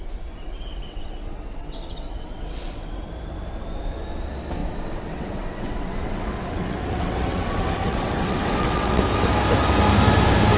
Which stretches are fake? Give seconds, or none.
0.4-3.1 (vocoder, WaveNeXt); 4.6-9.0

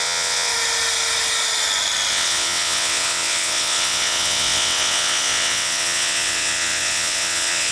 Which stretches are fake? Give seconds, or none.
0.0-0.5 (vocoder, WaveNeXt); 2.1-7.7